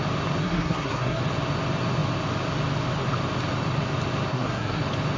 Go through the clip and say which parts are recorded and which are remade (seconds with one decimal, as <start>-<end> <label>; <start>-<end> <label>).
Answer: 0.0-0.4 recorded; 0.4-1.2 remade; 1.2-4.3 recorded; 4.3-4.8 remade; 4.8-5.2 recorded